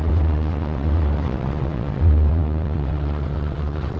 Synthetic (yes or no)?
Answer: yes